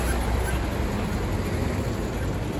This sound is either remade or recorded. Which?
recorded